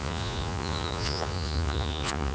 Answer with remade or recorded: remade